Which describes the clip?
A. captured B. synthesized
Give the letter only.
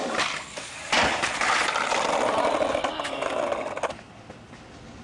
A